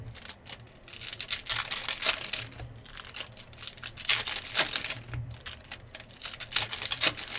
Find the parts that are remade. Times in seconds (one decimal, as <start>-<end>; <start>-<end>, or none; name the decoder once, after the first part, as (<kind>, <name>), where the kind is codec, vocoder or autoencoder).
none